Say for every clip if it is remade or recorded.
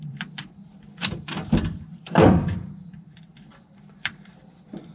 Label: remade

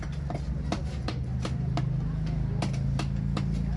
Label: recorded